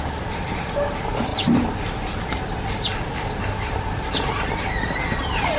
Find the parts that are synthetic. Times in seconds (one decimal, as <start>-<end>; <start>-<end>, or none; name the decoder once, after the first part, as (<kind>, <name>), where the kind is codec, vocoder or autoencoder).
0.0-2.9 (vocoder, BigVGAN v2); 3.5-5.6